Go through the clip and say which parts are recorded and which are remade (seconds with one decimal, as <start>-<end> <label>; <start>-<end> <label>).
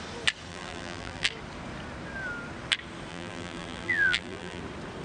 0.0-0.5 recorded; 0.5-1.3 remade; 1.3-3.1 recorded; 3.1-4.6 remade; 4.6-5.0 recorded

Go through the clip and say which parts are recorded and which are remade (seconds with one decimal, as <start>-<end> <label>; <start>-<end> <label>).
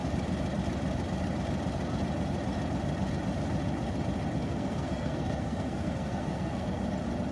0.0-4.4 recorded; 4.4-6.8 remade; 6.8-7.3 recorded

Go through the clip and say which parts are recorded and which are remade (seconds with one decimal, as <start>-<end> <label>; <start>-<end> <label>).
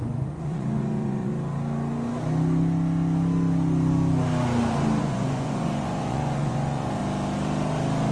0.0-1.3 remade; 1.3-5.0 recorded; 5.0-7.0 remade; 7.0-8.1 recorded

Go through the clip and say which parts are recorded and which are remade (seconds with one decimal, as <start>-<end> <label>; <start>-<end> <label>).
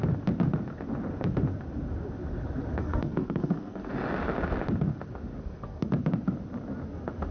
0.0-2.8 recorded; 2.8-3.9 remade; 3.9-5.4 recorded; 5.4-5.9 remade; 5.9-7.3 recorded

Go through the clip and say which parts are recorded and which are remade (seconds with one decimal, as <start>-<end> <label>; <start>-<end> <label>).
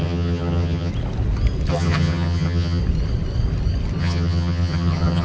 0.0-0.9 remade; 0.9-1.7 recorded; 1.7-2.8 remade; 2.8-4.0 recorded; 4.0-5.2 remade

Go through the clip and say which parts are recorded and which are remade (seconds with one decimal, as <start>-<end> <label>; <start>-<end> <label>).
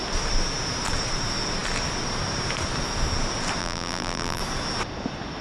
0.0-3.6 recorded; 3.6-4.4 remade; 4.4-5.4 recorded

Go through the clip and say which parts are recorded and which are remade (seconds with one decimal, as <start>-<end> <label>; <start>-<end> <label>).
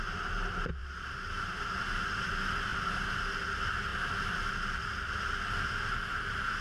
0.0-6.6 recorded